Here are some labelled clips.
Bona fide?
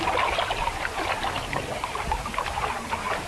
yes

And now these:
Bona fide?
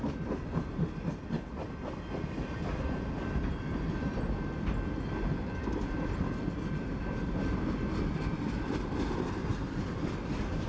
yes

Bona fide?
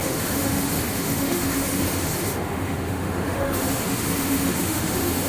no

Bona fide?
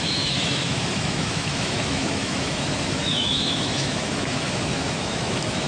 no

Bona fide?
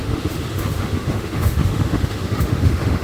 no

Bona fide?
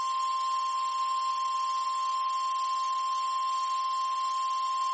yes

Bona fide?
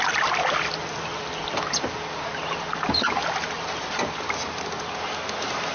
yes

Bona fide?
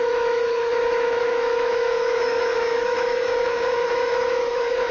no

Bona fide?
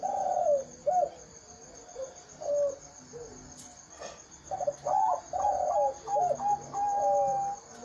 yes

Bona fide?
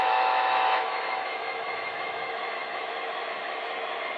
no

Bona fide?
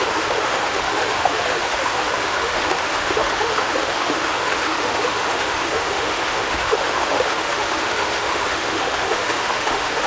no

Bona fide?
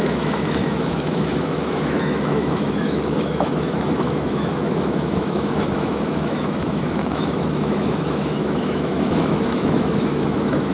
no